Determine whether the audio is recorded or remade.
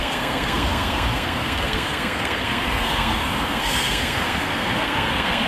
remade